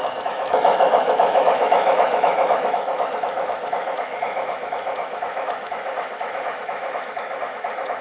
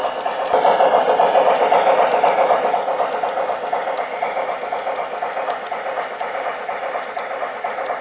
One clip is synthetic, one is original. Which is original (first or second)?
second